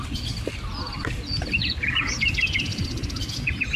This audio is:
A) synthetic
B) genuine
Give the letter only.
B